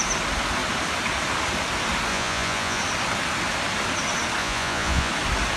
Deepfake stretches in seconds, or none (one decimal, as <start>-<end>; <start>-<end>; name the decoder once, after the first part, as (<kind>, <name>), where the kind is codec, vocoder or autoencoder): 2.1-2.8 (vocoder, Vocos); 4.4-5.1